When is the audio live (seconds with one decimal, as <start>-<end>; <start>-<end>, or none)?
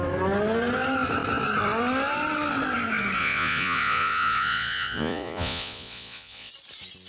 0.0-3.2; 6.5-7.1